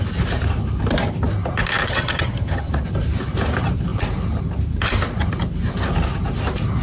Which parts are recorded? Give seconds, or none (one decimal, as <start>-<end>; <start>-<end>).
0.0-1.9; 2.7-6.8